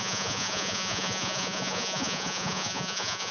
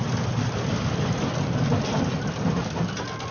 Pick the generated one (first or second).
first